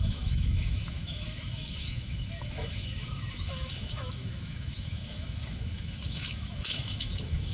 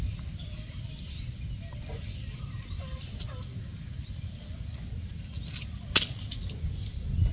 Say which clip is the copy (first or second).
first